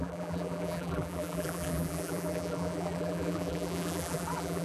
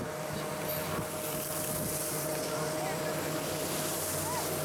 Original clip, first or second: second